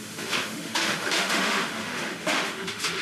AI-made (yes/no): yes